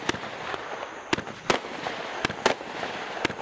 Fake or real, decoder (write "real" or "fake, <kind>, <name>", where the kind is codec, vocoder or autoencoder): real